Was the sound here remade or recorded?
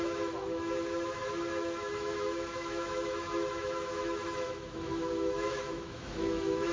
remade